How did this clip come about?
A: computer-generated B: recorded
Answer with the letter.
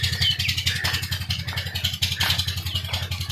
B